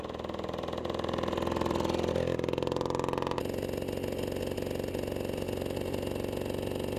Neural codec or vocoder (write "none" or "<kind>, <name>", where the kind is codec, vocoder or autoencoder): none